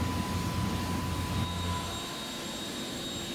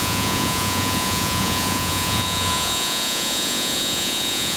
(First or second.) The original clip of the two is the first